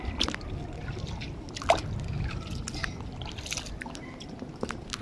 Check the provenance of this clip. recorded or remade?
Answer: recorded